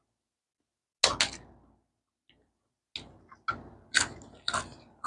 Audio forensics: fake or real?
real